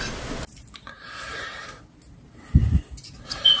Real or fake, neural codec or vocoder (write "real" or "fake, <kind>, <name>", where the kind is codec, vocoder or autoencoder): real